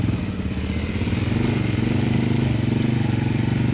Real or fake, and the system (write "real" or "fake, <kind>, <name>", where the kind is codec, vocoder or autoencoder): real